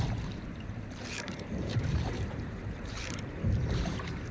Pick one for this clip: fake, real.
fake